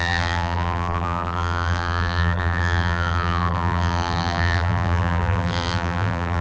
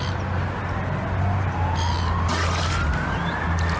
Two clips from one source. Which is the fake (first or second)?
first